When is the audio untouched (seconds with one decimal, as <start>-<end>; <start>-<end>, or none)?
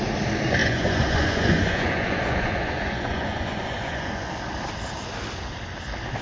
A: 0.0-0.6; 4.3-6.2